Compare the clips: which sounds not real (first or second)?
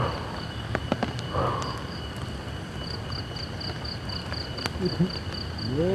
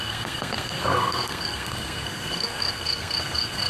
second